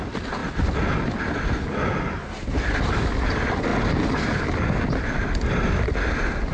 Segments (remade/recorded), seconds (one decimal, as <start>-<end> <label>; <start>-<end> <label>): 0.0-6.5 recorded